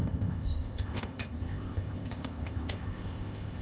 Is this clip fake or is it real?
fake